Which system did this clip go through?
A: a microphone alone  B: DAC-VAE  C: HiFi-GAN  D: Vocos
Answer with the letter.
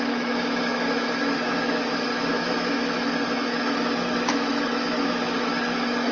B